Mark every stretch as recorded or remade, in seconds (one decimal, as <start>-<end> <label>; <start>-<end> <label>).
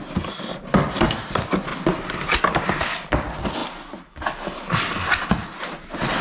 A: 0.0-6.2 recorded